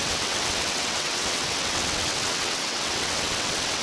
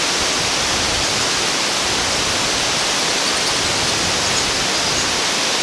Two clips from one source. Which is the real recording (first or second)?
second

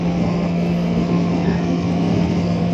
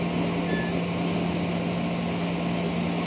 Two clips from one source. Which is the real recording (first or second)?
second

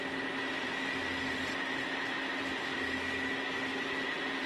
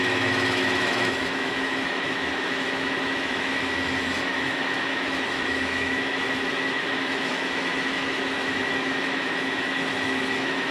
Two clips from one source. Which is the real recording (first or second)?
first